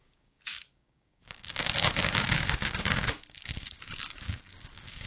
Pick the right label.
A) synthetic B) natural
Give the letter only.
A